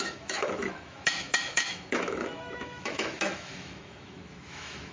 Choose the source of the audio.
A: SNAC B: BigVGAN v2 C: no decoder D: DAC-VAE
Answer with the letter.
D